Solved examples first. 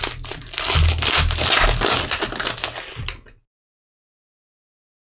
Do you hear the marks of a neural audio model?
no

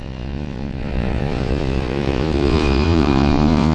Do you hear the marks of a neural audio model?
yes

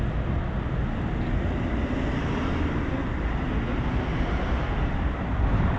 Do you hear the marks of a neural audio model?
no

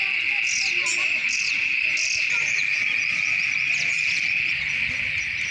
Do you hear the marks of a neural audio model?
no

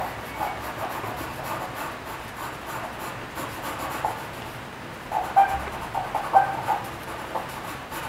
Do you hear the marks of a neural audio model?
no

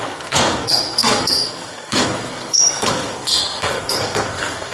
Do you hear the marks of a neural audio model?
yes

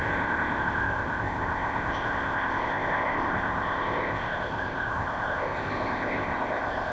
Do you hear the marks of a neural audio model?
yes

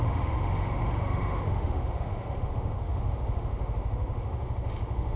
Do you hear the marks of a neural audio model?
yes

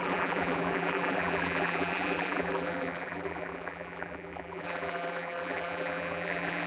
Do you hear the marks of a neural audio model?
yes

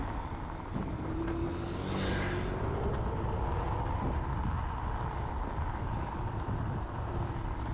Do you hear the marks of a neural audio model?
no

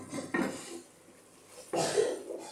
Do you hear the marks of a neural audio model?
no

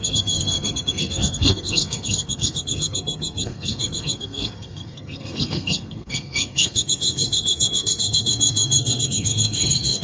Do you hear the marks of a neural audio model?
yes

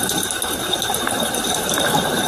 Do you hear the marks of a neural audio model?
yes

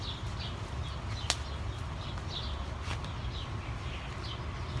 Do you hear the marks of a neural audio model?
no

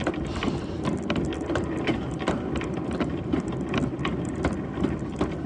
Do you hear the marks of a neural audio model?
no